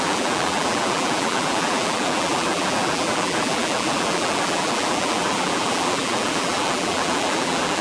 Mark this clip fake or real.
fake